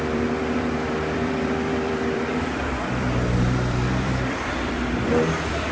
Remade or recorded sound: remade